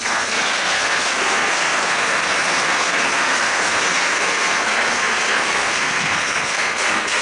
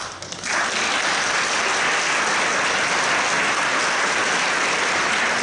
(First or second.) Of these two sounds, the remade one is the first